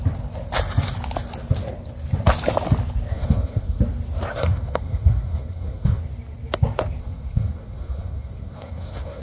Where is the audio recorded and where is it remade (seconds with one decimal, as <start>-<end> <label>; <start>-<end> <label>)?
0.0-3.1 recorded; 3.1-3.8 remade; 3.8-4.3 recorded; 4.3-6.0 remade; 6.0-7.0 recorded; 7.0-9.2 remade